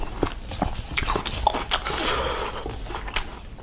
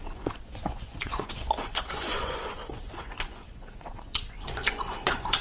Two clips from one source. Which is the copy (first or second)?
second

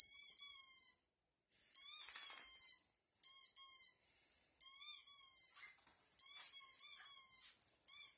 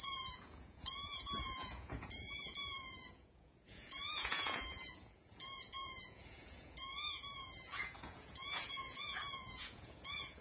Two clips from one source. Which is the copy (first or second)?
second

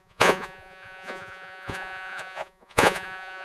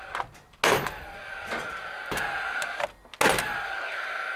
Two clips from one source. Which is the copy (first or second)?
first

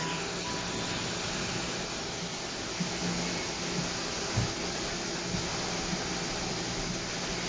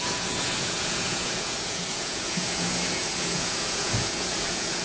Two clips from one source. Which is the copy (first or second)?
second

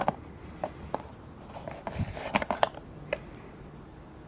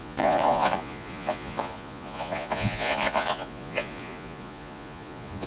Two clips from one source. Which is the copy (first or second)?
second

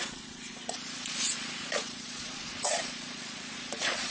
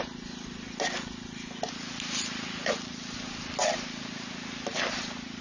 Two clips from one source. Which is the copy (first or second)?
first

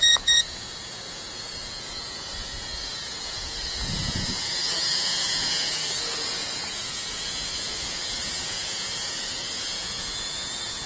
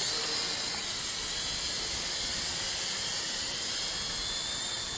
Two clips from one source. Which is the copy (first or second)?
first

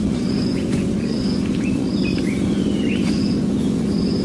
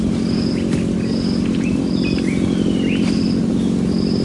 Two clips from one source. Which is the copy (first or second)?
first